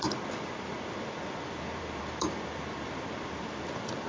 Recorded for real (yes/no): no